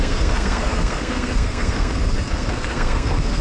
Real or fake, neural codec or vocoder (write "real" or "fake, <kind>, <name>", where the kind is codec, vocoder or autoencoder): fake, codec, SNAC